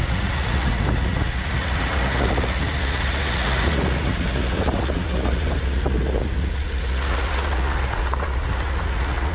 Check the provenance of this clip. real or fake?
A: fake